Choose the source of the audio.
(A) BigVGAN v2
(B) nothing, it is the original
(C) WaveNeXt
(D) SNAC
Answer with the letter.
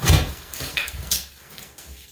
D